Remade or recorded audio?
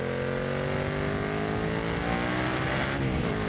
recorded